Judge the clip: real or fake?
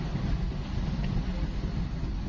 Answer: real